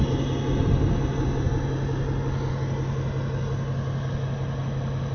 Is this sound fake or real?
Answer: real